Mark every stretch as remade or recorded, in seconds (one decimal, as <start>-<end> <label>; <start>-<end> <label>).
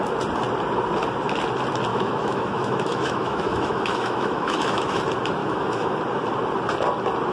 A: 0.0-1.9 recorded; 1.9-5.0 remade; 5.0-5.4 recorded; 5.4-6.0 remade; 6.0-7.3 recorded